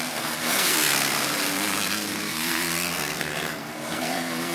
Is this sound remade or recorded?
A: remade